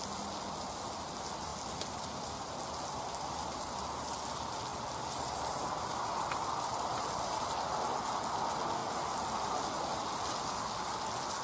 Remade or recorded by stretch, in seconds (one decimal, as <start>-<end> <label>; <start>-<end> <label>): 0.0-4.7 recorded; 4.7-7.5 remade; 7.5-11.4 recorded